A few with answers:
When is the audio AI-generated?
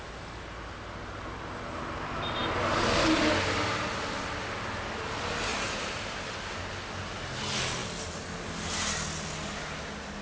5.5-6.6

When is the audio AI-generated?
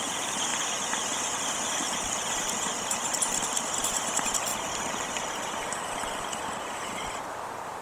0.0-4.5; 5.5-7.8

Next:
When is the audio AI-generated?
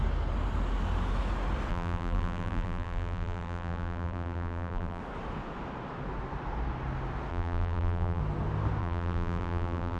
1.7-5.0; 7.3-8.2; 8.8-10.0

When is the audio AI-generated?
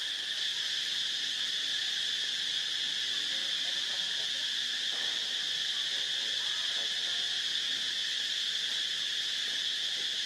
1.8-2.4; 3.4-4.1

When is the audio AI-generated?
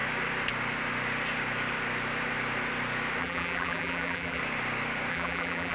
3.2-4.4; 5.1-5.7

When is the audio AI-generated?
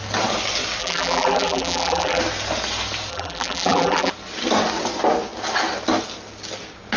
0.8-2.2; 3.1-4.1